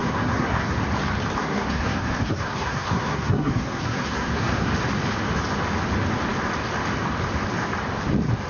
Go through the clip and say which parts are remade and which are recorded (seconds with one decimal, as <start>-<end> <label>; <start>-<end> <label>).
0.0-0.8 remade; 0.8-1.4 recorded; 1.4-4.7 remade; 4.7-8.5 recorded